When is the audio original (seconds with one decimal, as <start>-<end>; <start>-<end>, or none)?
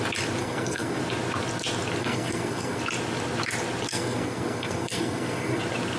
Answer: 0.0-0.4; 1.0-2.0; 2.8-3.9; 5.6-6.0